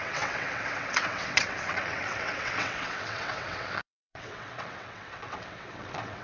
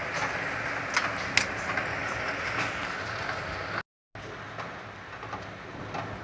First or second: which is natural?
second